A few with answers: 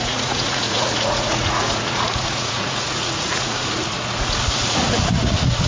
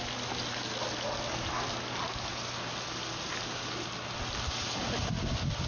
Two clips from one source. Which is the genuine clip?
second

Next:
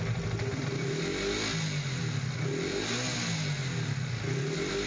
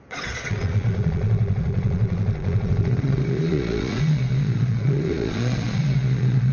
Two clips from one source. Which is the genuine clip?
first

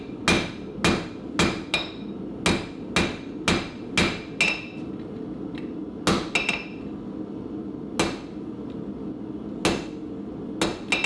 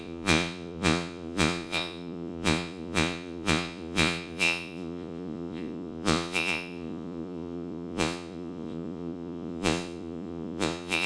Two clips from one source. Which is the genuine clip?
first